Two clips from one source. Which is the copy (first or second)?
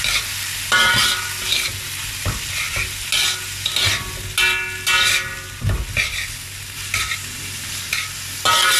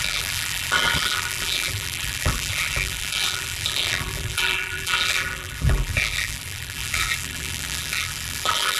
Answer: second